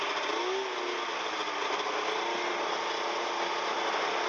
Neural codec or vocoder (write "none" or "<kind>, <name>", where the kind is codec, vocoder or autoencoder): none